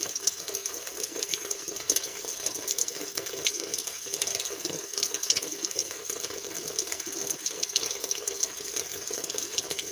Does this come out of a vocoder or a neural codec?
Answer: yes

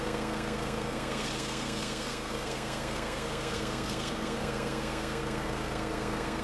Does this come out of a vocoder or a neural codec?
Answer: yes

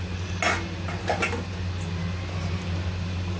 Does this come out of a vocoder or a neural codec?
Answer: no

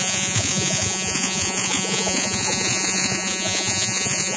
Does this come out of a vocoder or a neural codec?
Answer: yes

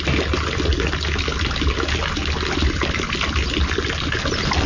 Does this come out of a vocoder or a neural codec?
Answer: no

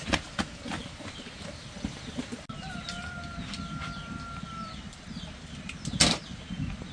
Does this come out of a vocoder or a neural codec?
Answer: no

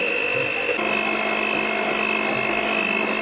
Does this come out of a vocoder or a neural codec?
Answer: no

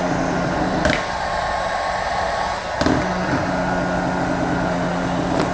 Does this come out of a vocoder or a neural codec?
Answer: no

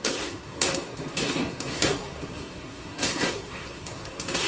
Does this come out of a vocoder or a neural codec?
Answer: yes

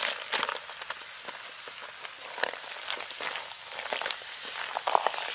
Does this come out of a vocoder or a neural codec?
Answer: no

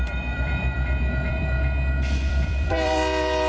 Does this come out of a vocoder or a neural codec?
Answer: yes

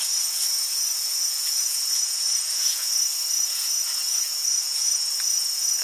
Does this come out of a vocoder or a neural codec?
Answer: yes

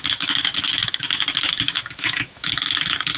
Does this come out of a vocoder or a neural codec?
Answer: yes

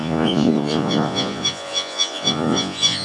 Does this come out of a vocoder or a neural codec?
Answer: yes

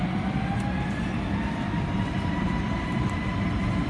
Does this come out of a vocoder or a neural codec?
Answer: no